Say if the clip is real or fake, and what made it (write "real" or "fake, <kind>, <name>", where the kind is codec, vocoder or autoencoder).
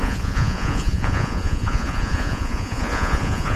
fake, vocoder, Vocos